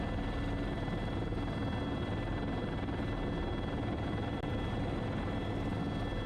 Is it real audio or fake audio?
real